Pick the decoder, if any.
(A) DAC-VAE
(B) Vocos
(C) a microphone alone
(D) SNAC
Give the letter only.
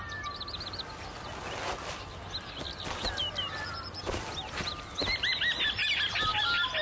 C